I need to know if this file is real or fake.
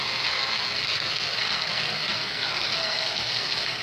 fake